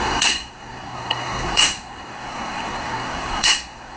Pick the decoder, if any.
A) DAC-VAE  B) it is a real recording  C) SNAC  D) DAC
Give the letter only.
C